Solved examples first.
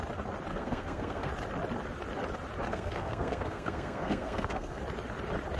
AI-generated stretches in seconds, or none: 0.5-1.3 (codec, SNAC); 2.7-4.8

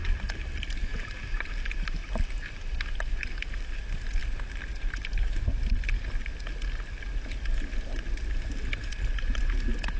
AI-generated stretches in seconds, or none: none

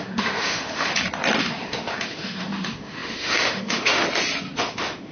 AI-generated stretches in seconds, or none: 0.0-0.9 (autoencoder, DAC-VAE); 1.4-4.0; 4.6-5.1

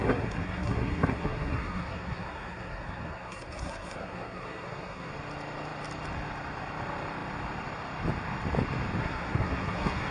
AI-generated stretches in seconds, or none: 0.0-5.1 (codec, SNAC); 9.0-10.1

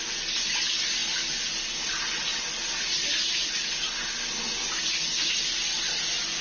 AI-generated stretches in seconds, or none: none

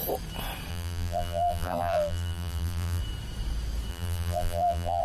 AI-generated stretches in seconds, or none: 0.7-3.0 (vocoder, BigVGAN v2); 3.9-5.0

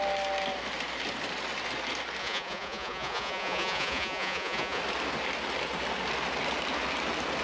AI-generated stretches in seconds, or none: 2.2-4.8 (vocoder, Vocos)

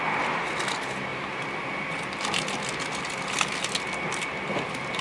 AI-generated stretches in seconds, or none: none